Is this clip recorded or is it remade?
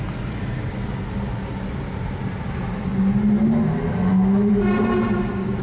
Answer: recorded